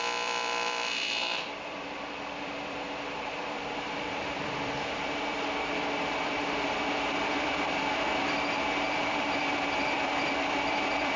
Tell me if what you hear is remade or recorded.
remade